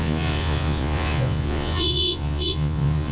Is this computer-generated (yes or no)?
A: yes